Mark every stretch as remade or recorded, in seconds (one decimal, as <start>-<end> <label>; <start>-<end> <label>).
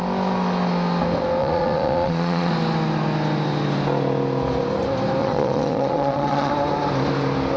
0.0-1.4 recorded; 1.4-2.5 remade; 2.5-5.2 recorded; 5.2-6.5 remade; 6.5-7.6 recorded